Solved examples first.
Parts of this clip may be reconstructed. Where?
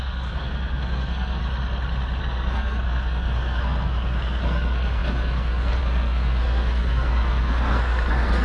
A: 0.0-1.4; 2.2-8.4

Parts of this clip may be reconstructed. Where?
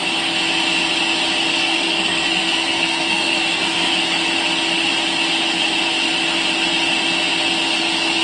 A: 1.5-3.9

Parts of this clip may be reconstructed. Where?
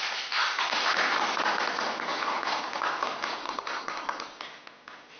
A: 3.4-4.4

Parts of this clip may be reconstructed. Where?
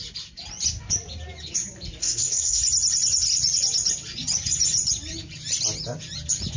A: 2.0-2.6